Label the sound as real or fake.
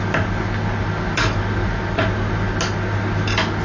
real